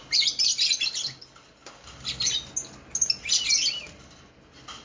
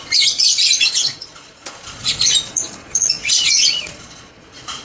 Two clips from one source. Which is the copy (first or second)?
second